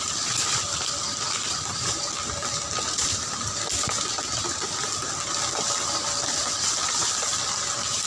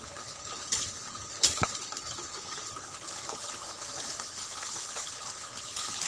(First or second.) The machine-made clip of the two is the second